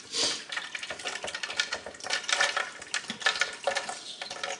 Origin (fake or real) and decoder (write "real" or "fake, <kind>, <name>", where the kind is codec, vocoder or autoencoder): real